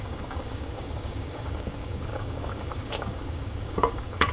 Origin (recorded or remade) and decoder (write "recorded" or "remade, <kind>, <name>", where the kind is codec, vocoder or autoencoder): remade, codec, DAC